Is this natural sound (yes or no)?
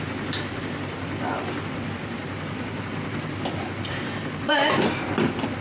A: yes